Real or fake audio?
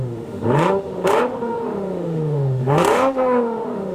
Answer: fake